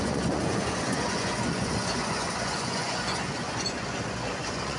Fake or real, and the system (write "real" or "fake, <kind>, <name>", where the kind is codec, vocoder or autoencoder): fake, vocoder, Vocos